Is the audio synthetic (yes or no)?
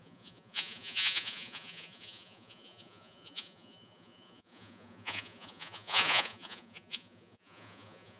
yes